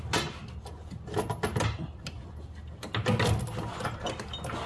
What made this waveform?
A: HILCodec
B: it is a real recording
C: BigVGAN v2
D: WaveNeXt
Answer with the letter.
B